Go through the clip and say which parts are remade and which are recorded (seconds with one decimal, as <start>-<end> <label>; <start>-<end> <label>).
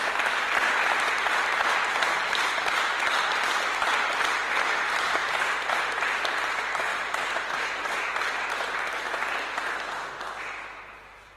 0.0-5.2 recorded; 5.2-5.8 remade; 5.8-6.9 recorded; 6.9-7.9 remade; 7.9-11.4 recorded